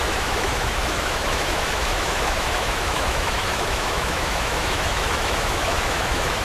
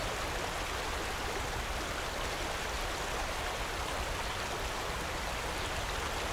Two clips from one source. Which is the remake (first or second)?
first